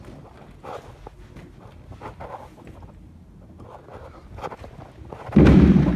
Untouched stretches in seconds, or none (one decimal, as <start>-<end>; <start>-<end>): 0.0-6.0